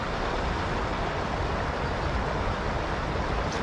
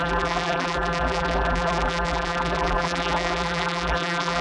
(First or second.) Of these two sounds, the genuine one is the first